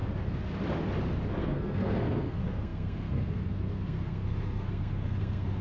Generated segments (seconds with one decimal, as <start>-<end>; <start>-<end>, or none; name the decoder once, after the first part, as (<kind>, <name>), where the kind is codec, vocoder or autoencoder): 1.4-5.6 (codec, SNAC)